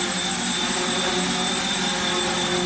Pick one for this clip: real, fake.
real